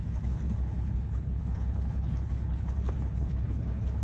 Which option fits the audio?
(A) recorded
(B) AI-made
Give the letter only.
B